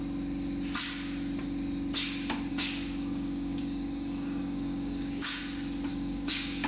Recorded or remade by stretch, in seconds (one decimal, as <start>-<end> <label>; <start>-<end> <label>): 0.0-2.5 recorded; 2.5-5.4 remade; 5.4-5.9 recorded; 5.9-6.7 remade